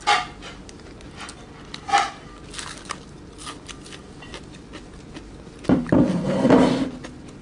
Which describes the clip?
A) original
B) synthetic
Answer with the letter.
A